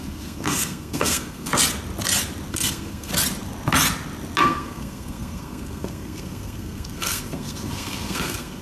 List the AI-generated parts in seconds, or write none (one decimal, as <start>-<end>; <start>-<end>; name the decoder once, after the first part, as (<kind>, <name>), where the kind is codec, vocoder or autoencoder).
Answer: 0.0-1.5 (codec, SNAC); 2.5-3.1; 4.4-8.6